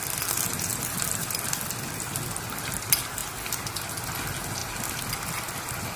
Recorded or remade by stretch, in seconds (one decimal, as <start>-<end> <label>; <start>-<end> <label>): 0.0-0.7 recorded; 0.7-1.7 remade; 1.7-6.0 recorded